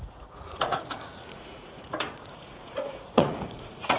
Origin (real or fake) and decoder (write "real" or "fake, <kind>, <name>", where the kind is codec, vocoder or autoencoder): fake, vocoder, Vocos